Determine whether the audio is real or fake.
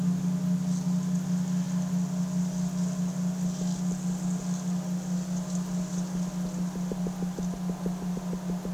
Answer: real